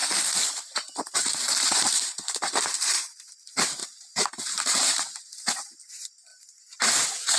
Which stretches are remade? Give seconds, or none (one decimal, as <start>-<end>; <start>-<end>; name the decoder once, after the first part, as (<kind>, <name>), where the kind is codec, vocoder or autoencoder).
0.0-2.8 (vocoder, BigVGAN v2); 3.8-5.1; 6.3-6.9